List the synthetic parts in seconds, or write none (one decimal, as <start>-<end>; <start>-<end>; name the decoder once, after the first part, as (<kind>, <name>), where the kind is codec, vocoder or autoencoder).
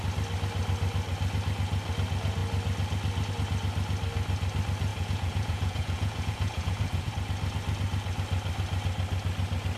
4.9-7.1 (vocoder, Vocos)